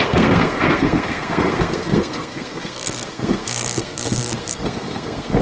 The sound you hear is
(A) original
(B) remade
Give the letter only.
B